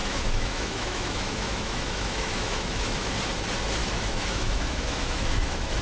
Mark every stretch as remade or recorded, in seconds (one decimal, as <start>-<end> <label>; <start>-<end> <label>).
0.0-3.1 remade; 3.1-3.8 recorded; 3.8-5.8 remade